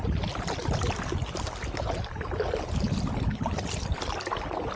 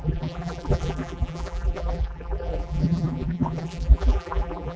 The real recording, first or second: first